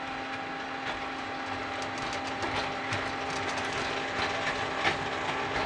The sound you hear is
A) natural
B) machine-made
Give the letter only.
A